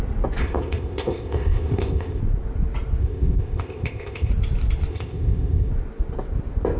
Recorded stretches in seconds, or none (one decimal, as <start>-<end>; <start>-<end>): 0.0-0.4; 2.2-3.0; 4.3-4.9; 5.7-6.8